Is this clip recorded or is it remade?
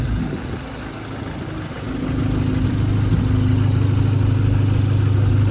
recorded